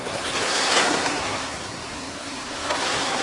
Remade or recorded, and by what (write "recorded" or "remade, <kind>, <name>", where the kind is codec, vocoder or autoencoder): remade, codec, SNAC